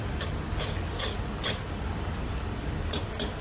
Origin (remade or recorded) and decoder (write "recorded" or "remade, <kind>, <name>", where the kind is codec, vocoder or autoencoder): recorded